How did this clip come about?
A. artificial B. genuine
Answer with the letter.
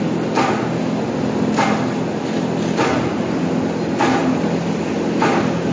B